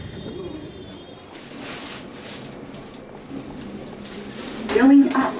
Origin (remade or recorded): remade